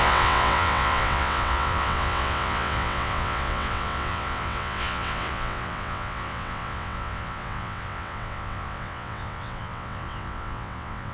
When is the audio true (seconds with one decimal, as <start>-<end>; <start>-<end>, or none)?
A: none